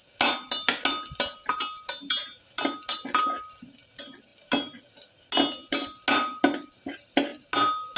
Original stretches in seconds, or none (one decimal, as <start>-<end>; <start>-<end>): 0.0-8.0